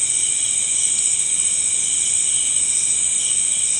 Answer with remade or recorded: recorded